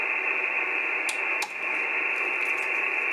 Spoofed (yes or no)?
no